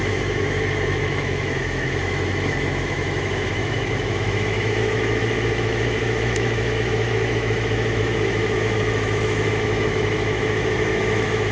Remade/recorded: remade